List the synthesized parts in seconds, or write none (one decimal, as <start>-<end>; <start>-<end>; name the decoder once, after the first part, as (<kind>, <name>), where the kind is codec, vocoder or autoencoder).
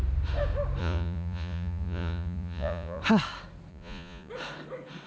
0.8-3.0 (vocoder, Vocos); 3.7-4.3